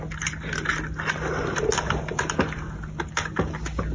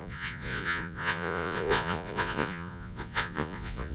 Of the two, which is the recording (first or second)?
first